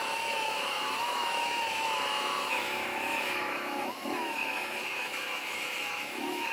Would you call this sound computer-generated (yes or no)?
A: yes